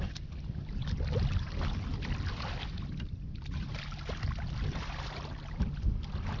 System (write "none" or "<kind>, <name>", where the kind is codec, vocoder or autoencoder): none